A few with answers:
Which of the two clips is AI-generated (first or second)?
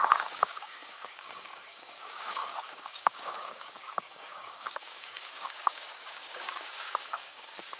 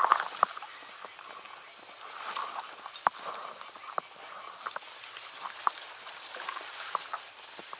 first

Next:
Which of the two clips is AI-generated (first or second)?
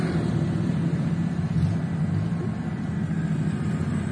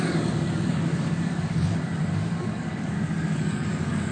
second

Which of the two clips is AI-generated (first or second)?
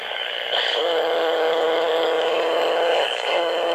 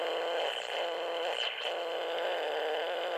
first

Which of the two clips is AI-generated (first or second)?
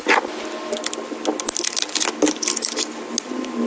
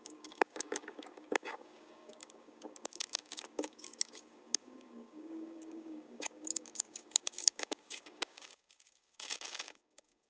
second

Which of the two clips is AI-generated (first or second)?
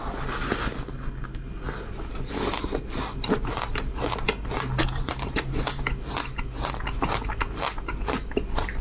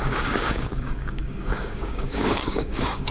second